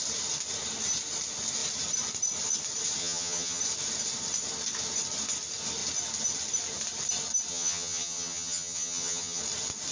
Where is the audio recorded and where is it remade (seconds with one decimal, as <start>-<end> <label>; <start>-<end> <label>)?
0.0-3.0 recorded; 3.0-3.6 remade; 3.6-7.5 recorded; 7.5-9.4 remade; 9.4-9.9 recorded